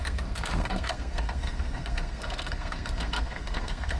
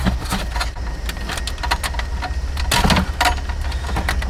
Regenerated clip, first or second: first